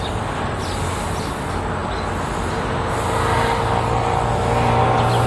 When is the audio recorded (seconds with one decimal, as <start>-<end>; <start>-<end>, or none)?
0.0-5.3